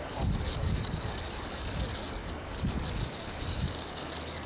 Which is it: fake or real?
fake